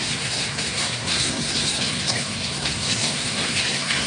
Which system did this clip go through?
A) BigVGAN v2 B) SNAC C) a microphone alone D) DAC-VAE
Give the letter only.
B